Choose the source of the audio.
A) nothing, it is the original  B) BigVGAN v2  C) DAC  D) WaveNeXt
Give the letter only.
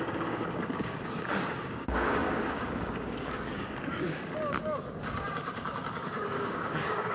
C